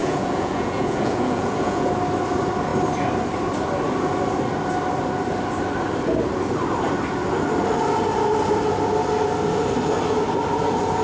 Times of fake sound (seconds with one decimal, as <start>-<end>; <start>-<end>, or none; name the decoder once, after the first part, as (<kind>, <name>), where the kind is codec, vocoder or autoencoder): 0.0-1.9 (vocoder, Vocos)